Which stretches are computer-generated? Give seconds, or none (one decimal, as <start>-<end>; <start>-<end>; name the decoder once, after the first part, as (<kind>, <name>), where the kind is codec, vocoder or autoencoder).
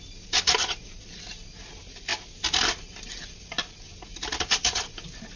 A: none